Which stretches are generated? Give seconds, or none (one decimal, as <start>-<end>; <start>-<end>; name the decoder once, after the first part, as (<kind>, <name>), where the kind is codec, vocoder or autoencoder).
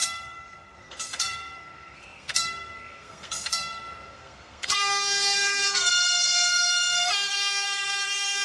0.0-8.4 (codec, SNAC)